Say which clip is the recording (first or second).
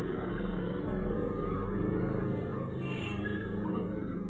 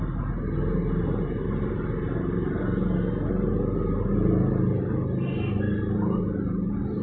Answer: second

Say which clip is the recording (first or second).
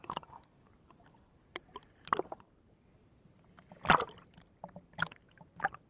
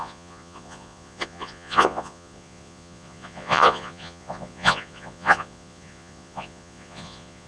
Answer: first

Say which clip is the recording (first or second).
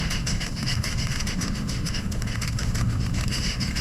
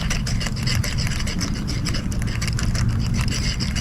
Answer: second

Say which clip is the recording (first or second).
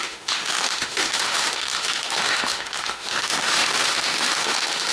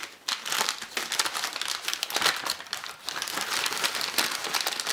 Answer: second